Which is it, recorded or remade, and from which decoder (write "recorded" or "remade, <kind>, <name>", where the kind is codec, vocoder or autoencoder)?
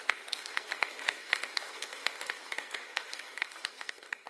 remade, codec, SNAC